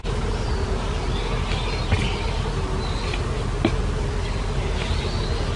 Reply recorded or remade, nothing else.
recorded